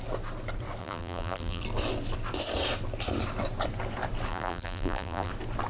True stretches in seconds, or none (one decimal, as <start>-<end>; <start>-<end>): 0.0-0.8; 1.6-4.3; 5.3-5.7